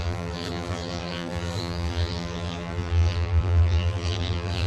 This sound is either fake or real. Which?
fake